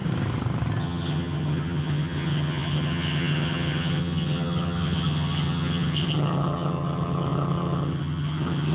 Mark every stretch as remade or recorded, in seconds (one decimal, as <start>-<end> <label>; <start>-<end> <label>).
0.0-0.8 recorded; 0.8-8.7 remade